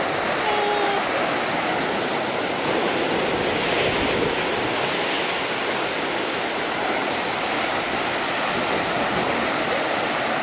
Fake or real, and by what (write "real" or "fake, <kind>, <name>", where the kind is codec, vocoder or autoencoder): real